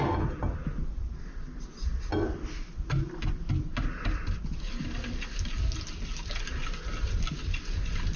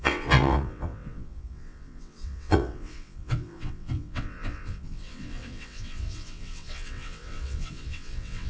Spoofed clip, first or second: second